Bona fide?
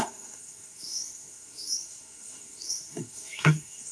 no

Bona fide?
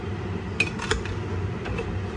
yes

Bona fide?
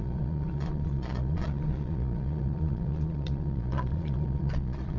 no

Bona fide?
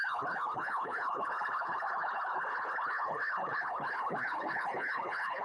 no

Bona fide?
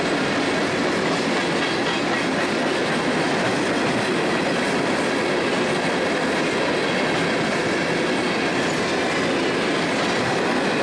yes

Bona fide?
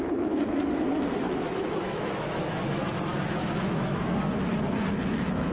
no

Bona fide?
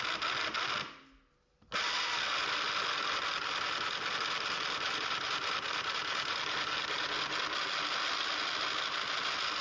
yes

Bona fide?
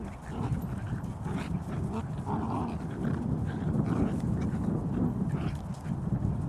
yes